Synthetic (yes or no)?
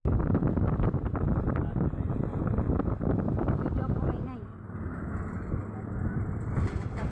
no